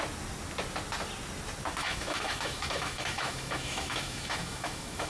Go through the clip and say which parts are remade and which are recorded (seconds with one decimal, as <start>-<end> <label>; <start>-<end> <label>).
0.0-1.8 recorded; 1.8-5.1 remade